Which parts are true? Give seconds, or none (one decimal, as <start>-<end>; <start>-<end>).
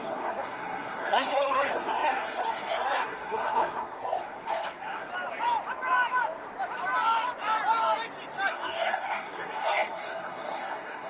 5.1-8.5